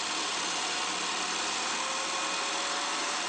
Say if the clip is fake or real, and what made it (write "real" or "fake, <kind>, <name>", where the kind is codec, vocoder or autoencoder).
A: real